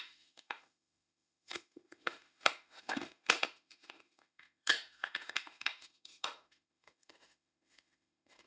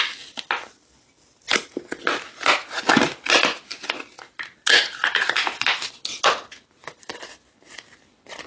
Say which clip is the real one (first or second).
second